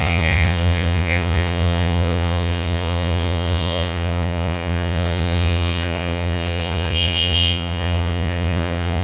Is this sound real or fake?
fake